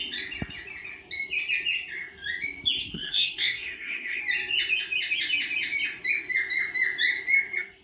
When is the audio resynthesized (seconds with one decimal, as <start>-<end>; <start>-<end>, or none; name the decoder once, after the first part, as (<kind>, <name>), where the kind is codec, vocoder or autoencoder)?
2.8-4.2 (codec, SNAC)

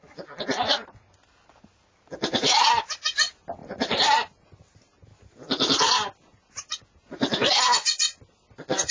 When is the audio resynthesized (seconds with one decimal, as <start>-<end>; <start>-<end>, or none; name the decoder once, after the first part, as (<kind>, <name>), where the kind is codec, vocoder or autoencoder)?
none